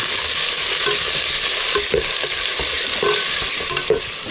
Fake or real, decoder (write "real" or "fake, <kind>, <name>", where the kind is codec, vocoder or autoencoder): real